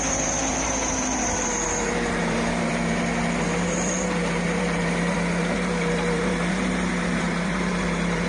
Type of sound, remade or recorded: remade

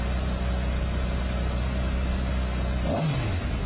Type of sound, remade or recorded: recorded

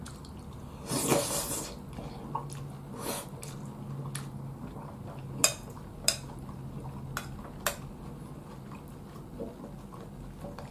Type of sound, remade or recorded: recorded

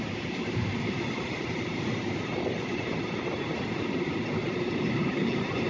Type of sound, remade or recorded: remade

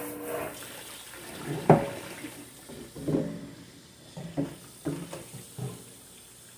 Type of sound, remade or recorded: recorded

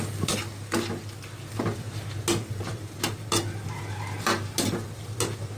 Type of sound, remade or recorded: recorded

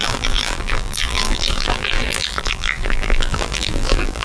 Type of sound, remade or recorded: remade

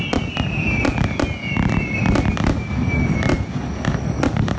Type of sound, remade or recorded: recorded